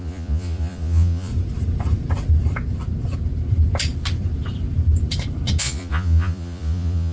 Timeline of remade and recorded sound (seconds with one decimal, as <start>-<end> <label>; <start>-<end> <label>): 0.0-1.3 remade; 1.3-5.6 recorded; 5.6-7.1 remade